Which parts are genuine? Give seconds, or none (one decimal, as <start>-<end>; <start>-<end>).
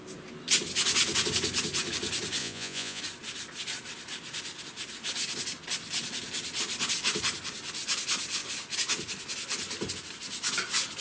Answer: 0.0-2.4; 3.0-11.0